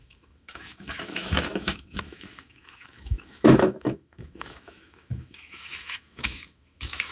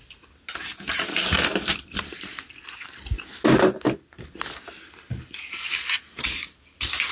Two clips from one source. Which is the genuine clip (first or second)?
second